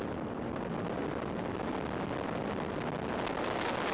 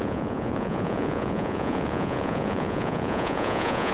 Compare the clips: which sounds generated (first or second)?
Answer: second